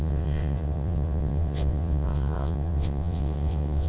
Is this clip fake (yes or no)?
yes